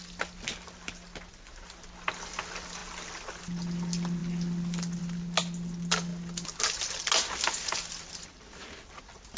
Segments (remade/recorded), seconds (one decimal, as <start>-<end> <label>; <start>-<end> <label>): 0.0-9.4 recorded